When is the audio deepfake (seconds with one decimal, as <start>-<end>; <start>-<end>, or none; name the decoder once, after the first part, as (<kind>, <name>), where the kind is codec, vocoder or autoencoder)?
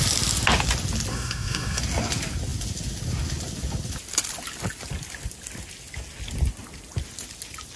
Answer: 1.1-1.8 (codec, SNAC)